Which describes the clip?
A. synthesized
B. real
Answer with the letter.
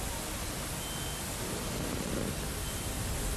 B